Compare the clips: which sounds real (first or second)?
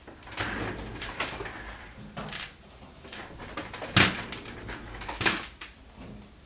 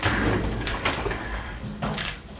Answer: first